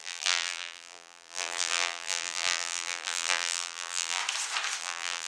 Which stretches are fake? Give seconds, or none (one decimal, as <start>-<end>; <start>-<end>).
0.0-4.2; 4.8-5.3